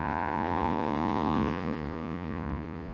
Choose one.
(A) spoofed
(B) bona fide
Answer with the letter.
A